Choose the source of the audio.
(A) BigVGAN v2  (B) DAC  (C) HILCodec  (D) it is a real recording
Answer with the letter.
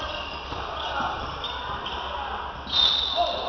D